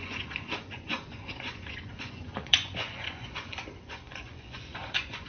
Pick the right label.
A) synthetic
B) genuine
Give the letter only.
A